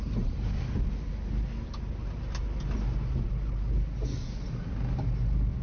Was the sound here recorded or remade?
recorded